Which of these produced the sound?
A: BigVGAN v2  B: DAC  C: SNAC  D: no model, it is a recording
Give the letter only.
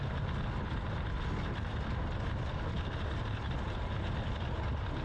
D